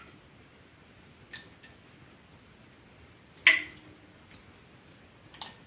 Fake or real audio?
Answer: real